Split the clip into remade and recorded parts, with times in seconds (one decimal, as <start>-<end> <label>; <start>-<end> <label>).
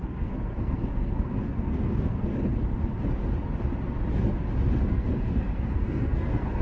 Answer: 0.0-2.3 remade; 2.3-4.9 recorded; 4.9-6.6 remade